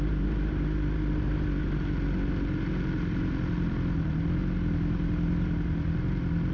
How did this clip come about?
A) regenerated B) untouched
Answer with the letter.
B